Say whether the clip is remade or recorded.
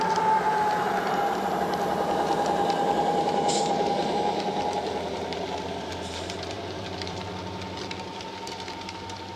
remade